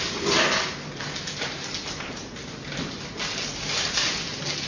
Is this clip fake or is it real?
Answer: real